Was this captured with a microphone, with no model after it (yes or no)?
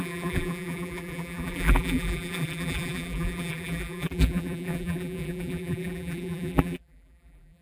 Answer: no